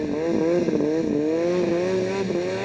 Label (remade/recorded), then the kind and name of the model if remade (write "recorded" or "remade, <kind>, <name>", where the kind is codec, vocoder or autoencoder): recorded